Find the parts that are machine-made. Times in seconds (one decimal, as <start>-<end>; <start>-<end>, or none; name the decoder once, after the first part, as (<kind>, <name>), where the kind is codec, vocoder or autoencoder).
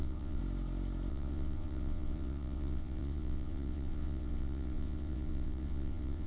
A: 0.0-0.4 (vocoder, WaveNeXt); 1.1-6.3